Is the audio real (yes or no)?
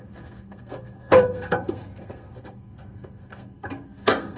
no